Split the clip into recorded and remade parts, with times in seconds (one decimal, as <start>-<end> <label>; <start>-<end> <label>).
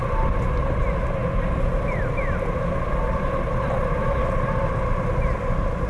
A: 0.0-5.9 recorded